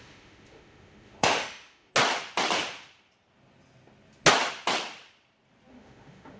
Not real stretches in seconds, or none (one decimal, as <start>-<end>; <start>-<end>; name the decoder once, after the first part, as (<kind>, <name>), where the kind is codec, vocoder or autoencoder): 0.0-1.9 (autoencoder, DAC-VAE); 5.7-6.4

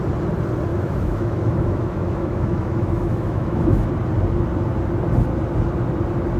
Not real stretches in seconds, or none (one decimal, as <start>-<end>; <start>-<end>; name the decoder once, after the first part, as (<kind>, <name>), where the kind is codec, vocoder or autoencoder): 0.7-3.9 (autoencoder, DAC-VAE)

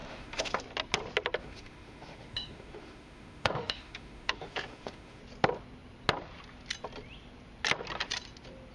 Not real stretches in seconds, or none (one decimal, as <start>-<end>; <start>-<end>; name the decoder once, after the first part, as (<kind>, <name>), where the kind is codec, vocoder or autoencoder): 0.0-0.6 (autoencoder, DAC-VAE); 1.4-5.2